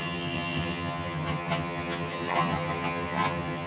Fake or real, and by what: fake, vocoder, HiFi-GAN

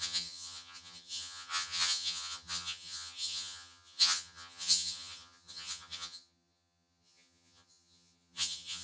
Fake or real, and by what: fake, vocoder, HiFi-GAN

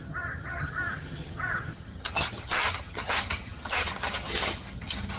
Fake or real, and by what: fake, vocoder, HiFi-GAN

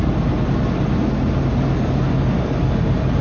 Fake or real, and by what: real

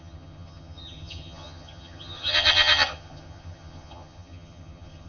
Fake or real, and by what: fake, vocoder, HiFi-GAN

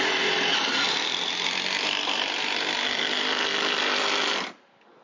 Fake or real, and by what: real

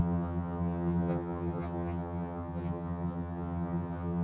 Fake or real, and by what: fake, vocoder, HiFi-GAN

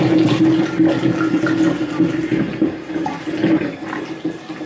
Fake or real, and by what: real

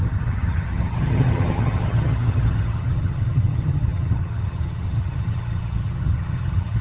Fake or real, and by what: fake, vocoder, HiFi-GAN